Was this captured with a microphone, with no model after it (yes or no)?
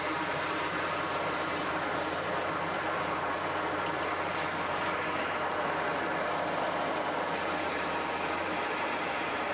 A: no